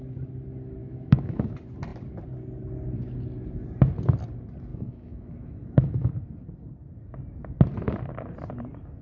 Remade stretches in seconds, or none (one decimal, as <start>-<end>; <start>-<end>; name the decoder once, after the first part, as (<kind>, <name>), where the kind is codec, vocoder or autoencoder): 0.8-1.5 (autoencoder, DAC-VAE); 4.7-6.1